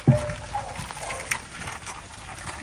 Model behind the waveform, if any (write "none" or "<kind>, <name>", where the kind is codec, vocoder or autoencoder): none